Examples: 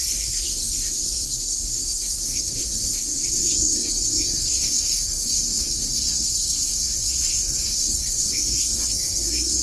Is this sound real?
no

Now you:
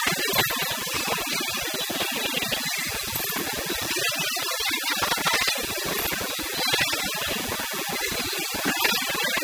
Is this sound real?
yes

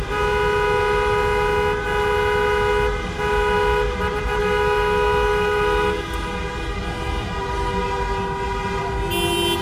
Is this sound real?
yes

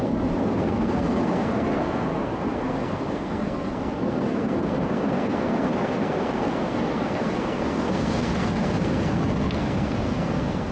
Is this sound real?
no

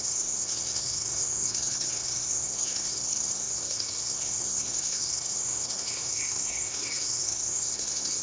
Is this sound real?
no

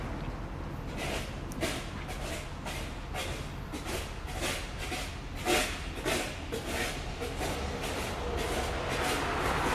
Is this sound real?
yes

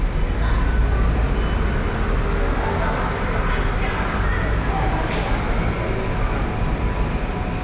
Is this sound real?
yes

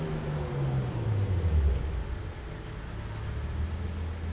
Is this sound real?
yes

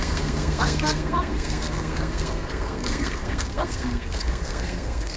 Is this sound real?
no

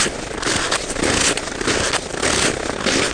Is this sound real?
yes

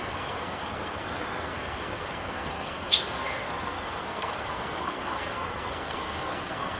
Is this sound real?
no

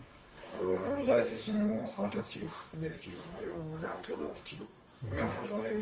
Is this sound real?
no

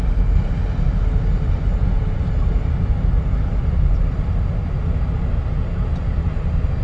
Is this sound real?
yes